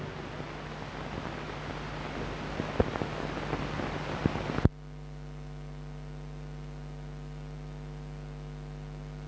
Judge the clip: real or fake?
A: real